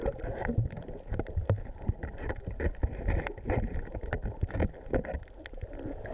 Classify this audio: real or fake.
real